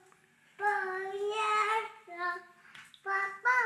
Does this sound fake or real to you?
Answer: real